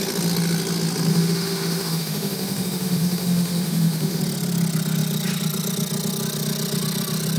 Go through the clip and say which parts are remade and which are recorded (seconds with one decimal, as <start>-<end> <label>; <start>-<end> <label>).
0.0-1.1 recorded; 1.1-4.2 remade; 4.2-7.4 recorded